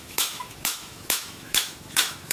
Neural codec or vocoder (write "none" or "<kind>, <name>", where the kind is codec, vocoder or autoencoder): autoencoder, DAC-VAE